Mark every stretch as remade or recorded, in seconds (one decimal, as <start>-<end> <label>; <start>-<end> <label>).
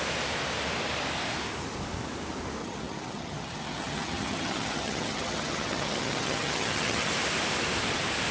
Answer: 0.0-2.6 recorded; 2.6-7.1 remade; 7.1-8.3 recorded